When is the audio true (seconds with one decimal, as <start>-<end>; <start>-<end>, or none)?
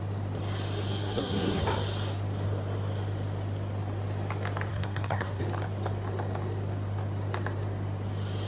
0.0-0.9; 1.6-4.7; 5.4-8.5